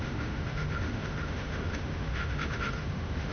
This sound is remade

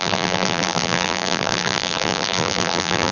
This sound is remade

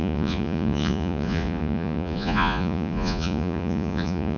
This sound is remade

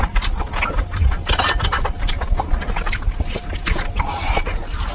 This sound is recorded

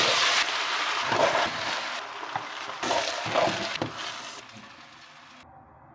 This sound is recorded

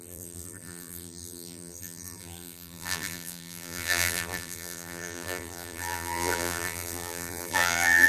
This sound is remade